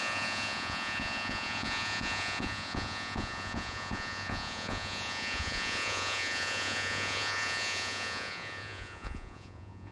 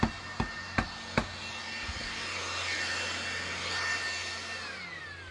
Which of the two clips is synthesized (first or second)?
first